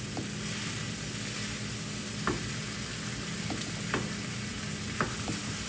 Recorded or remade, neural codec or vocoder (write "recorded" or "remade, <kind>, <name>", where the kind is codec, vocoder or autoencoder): recorded